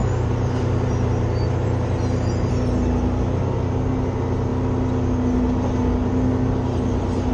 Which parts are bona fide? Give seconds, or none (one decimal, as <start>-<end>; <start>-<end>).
2.5-7.3